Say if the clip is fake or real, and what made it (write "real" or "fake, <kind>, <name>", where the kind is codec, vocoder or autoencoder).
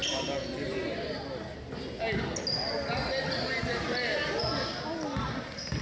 real